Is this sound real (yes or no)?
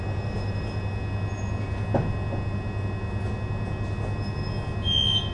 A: yes